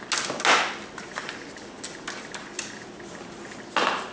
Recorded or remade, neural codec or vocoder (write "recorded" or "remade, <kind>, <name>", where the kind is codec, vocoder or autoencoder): recorded